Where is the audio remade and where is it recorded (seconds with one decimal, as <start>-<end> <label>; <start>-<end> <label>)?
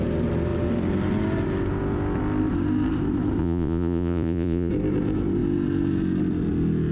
0.0-3.4 recorded; 3.4-4.7 remade; 4.7-6.9 recorded